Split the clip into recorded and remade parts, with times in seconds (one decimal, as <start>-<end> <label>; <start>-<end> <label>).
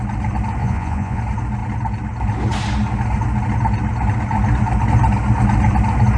0.0-0.6 recorded; 0.6-1.2 remade; 1.2-6.2 recorded